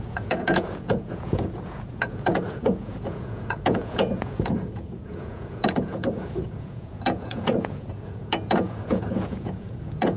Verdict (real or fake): fake